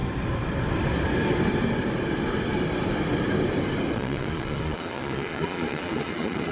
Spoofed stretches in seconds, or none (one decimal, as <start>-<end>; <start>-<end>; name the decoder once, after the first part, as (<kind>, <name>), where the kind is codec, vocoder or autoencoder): 3.9-6.5 (vocoder, Vocos)

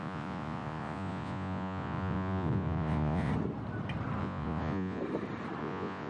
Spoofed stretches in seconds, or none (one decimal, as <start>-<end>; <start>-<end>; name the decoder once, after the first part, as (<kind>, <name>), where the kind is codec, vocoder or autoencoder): 0.0-3.3 (vocoder, Vocos); 4.2-5.0; 5.6-6.1

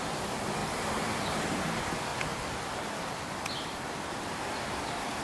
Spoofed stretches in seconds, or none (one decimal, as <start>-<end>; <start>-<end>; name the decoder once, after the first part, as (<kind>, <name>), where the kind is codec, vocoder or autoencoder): none

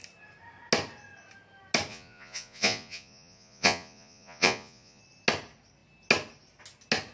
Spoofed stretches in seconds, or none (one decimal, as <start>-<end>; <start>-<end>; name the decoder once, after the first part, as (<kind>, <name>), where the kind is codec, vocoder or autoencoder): 1.9-5.0 (vocoder, Vocos)

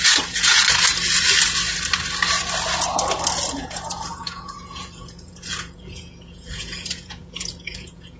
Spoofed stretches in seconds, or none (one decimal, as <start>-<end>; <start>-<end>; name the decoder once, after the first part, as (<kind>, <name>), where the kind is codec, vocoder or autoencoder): 0.0-0.6 (vocoder, Vocos); 3.5-8.2

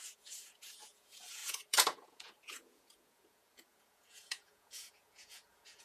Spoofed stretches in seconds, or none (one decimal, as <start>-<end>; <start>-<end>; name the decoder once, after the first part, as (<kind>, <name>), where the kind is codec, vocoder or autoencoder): 0.0-5.8 (vocoder, Vocos)

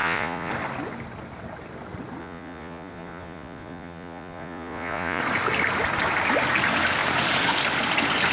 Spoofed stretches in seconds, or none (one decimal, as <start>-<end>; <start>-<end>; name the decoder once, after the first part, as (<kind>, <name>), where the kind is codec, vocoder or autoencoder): 0.0-0.5 (vocoder, Vocos); 2.2-5.2

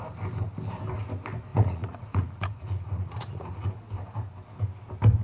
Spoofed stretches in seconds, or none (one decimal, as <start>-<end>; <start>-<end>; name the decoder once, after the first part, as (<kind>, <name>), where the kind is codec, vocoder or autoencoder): 1.5-3.7 (vocoder, Vocos)